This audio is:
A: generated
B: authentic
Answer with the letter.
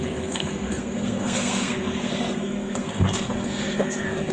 A